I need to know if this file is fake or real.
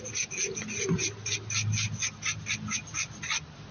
real